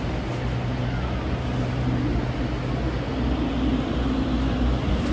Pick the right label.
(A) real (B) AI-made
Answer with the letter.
A